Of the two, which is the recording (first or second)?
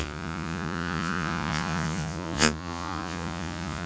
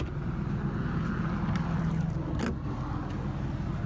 second